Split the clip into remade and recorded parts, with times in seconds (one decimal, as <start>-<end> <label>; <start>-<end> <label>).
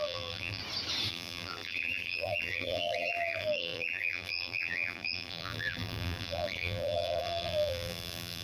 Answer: 0.0-0.6 remade; 0.6-1.1 recorded; 1.1-8.4 remade